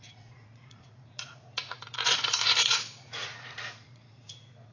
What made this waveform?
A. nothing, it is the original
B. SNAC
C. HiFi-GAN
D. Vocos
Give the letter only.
D